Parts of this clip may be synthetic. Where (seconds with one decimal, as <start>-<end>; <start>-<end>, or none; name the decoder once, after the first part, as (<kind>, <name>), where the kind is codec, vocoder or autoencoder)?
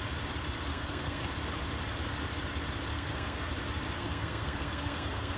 0.7-1.2 (codec, SNAC); 2.9-3.5; 4.0-5.4